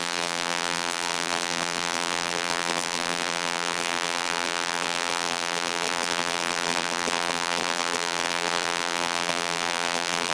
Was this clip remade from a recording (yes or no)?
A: yes